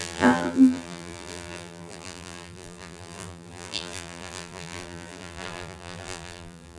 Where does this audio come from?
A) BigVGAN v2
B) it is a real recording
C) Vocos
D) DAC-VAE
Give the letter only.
A